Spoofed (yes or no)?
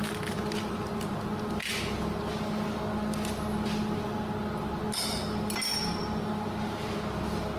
no